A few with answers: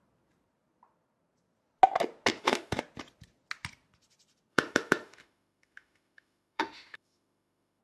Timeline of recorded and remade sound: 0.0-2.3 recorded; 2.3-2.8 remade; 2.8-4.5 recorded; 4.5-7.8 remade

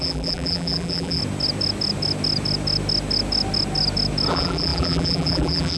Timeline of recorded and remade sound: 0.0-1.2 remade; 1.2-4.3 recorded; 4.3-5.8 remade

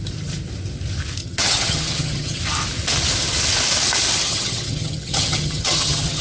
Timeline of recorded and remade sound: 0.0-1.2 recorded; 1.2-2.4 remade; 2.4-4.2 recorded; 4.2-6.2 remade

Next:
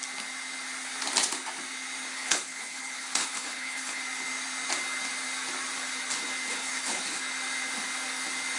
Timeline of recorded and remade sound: 0.0-2.1 recorded; 2.1-4.0 remade; 4.0-6.5 recorded; 6.5-7.2 remade; 7.2-8.6 recorded

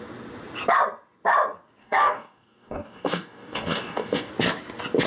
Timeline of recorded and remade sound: 0.0-1.8 recorded; 1.8-4.3 remade; 4.3-5.1 recorded

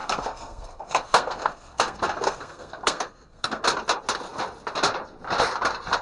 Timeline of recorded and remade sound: 0.0-3.6 remade; 3.6-6.0 recorded